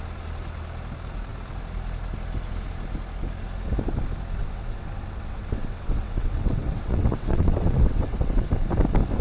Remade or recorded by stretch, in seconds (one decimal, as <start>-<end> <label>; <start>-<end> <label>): 0.0-4.4 recorded; 4.4-8.5 remade; 8.5-9.2 recorded